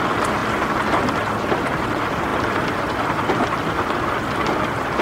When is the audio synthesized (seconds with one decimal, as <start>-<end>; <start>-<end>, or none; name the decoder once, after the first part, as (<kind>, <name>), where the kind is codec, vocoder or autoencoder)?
none